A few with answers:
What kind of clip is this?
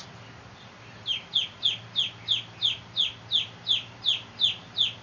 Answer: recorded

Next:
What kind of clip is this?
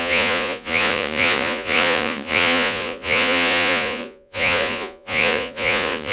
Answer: remade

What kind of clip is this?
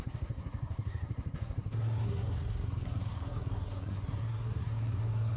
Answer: remade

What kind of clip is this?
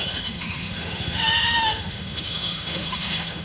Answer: remade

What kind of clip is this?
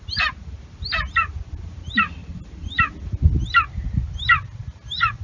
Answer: recorded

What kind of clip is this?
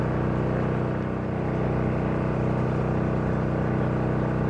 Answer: recorded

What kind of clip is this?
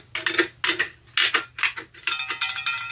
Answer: recorded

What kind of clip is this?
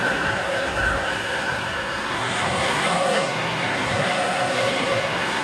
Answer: remade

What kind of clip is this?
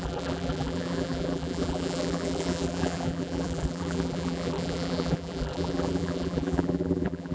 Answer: remade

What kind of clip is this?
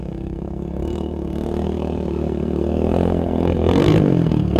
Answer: remade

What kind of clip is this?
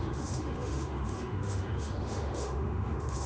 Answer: remade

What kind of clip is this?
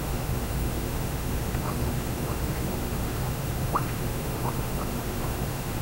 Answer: remade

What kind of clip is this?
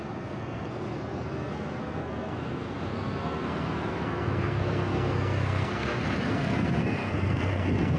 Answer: remade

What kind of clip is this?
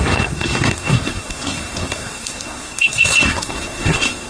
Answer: remade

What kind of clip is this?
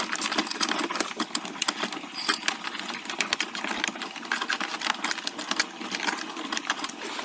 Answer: recorded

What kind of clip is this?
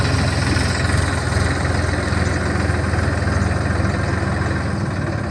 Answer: recorded